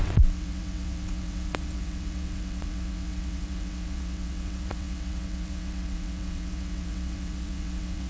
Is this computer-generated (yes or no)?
yes